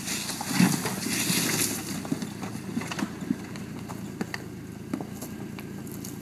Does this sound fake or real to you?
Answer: real